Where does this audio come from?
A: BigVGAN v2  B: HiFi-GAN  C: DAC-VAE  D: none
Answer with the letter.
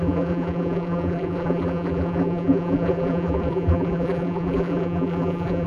A